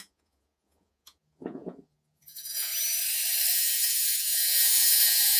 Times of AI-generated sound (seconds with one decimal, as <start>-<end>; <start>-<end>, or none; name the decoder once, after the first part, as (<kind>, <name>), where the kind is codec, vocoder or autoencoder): 0.0-2.7 (vocoder, Vocos); 3.5-5.4